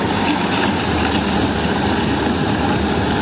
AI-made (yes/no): no